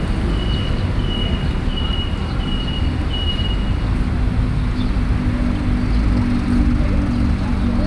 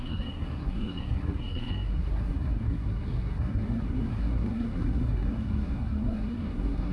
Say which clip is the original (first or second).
first